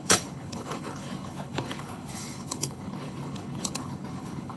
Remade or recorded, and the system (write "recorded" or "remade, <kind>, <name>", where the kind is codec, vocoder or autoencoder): remade, codec, HILCodec